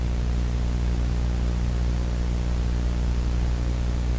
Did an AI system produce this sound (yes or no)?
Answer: no